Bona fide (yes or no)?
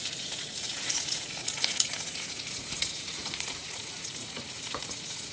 no